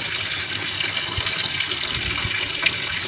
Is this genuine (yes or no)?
yes